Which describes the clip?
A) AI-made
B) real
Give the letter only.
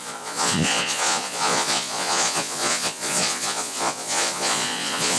A